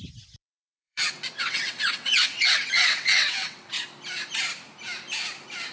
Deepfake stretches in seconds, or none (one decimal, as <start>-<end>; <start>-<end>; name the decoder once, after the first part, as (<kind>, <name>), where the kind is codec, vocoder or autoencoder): 0.4-3.8 (vocoder, WaveNeXt)